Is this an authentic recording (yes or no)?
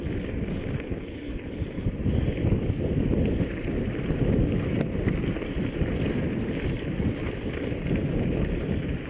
yes